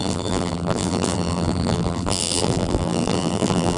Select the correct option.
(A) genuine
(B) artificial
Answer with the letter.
B